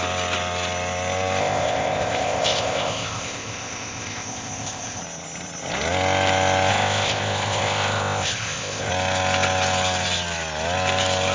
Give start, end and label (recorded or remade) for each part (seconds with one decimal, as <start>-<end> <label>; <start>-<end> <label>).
0.0-1.4 recorded; 1.4-5.0 remade; 5.0-6.7 recorded; 6.7-8.9 remade; 8.9-11.3 recorded